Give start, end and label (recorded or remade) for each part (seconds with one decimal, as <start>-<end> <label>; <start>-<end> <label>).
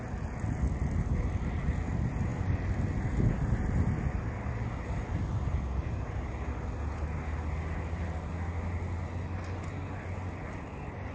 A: 0.0-11.1 recorded